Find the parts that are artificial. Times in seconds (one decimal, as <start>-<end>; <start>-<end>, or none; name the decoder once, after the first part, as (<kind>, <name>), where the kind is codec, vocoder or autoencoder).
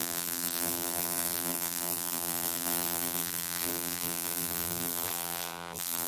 0.0-6.1 (vocoder, BigVGAN v2)